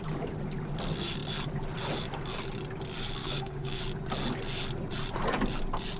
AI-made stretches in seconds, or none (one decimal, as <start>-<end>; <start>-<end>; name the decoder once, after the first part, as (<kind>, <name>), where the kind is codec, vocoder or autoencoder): 3.2-3.8 (codec, DAC)